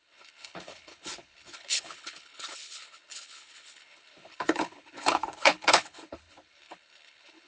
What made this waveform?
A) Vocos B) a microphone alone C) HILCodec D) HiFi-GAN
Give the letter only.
C